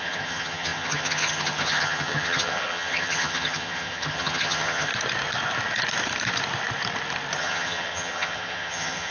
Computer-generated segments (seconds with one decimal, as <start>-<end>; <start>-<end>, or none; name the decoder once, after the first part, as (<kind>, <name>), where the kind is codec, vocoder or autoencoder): 0.0-4.9 (vocoder, HiFi-GAN); 7.4-9.1